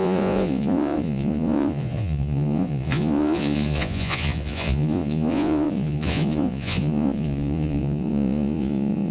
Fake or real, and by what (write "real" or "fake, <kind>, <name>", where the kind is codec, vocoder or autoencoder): fake, vocoder, Vocos